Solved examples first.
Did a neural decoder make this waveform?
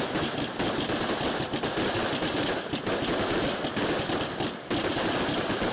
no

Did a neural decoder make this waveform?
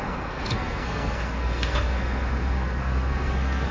yes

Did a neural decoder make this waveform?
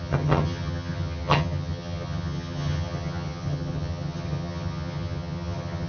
yes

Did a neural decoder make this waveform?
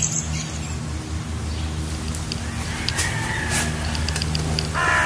no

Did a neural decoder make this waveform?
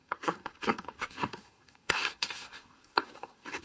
yes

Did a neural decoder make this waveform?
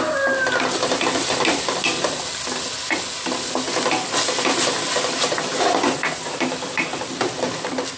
no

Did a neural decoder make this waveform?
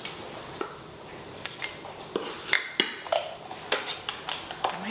no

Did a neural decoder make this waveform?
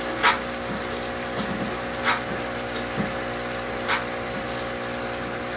no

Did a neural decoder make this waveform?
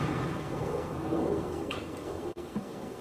yes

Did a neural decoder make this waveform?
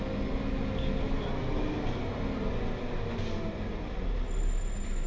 no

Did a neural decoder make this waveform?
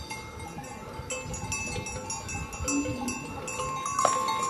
no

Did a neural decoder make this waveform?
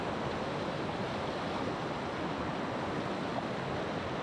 no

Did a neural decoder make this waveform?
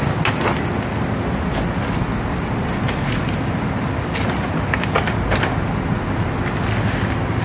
no